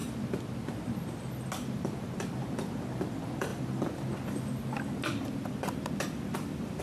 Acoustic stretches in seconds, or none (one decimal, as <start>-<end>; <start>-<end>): 0.0-3.5

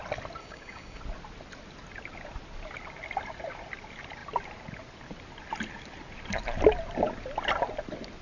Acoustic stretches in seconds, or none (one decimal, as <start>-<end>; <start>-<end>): 0.0-0.4; 1.0-8.2